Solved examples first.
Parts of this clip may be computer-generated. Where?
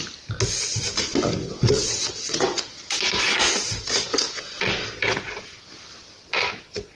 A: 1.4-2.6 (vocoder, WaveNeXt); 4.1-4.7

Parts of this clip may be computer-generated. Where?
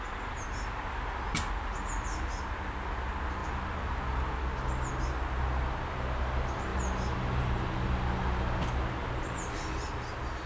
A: none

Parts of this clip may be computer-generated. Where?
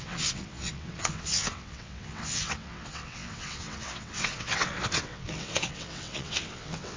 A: 0.0-7.0 (vocoder, WaveNeXt)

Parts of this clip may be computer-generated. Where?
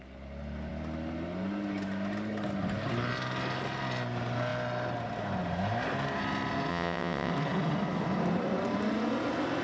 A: 6.7-7.3 (vocoder, WaveNeXt)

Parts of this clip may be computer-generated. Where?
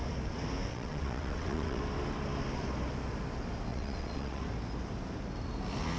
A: 0.7-1.8 (vocoder, WaveNeXt); 3.7-4.4